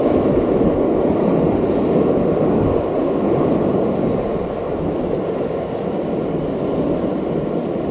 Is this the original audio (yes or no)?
yes